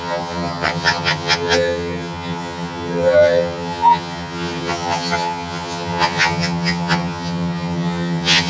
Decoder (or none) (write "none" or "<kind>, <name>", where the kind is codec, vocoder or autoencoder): vocoder, HiFi-GAN